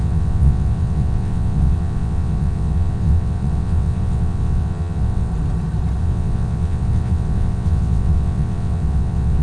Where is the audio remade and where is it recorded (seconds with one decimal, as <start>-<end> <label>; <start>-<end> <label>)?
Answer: 0.0-5.3 remade; 5.3-6.0 recorded; 6.0-9.4 remade